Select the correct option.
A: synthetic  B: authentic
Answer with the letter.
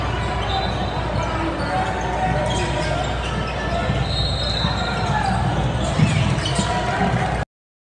B